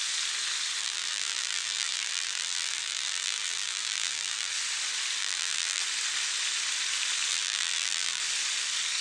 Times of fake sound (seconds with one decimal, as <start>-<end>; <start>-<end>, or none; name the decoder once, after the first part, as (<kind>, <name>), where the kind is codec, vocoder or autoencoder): 0.8-4.5 (vocoder, BigVGAN v2); 5.2-5.8; 7.3-8.2